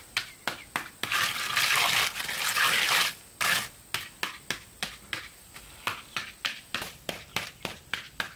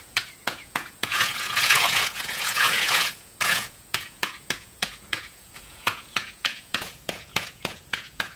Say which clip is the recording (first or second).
first